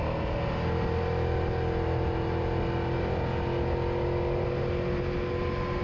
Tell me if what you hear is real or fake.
real